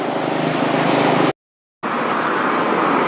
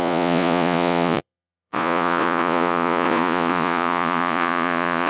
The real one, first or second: first